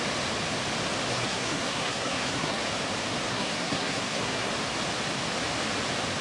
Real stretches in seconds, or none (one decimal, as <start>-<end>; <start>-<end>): 0.0-1.1; 2.6-3.3; 4.5-6.2